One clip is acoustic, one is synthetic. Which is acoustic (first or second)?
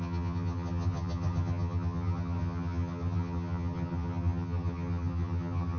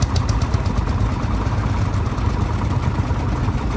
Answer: second